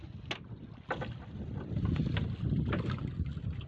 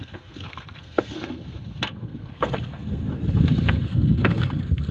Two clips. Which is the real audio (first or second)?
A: first